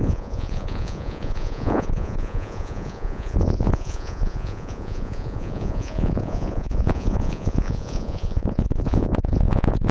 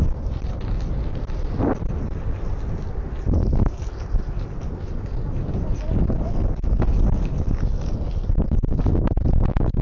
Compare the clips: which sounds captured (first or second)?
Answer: second